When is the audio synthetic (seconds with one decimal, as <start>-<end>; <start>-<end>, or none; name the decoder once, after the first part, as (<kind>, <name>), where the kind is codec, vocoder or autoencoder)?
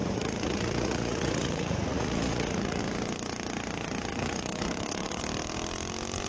0.0-2.8 (vocoder, Vocos); 4.1-5.2